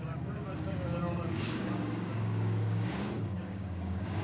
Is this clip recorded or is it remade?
remade